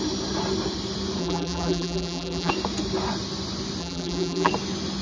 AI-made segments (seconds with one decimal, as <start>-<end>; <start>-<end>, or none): 1.2-2.5; 3.8-4.5